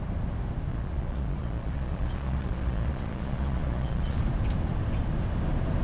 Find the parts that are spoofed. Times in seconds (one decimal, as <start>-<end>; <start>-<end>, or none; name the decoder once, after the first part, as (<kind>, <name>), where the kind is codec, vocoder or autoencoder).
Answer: 0.7-4.2 (vocoder, Vocos)